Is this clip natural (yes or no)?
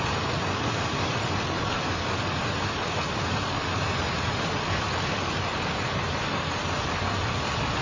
yes